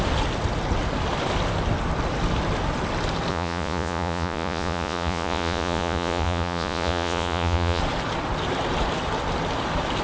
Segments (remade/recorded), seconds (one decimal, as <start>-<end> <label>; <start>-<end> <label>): 0.0-3.3 recorded; 3.3-7.8 remade; 7.8-10.0 recorded